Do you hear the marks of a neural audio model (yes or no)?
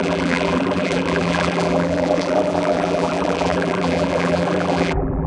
yes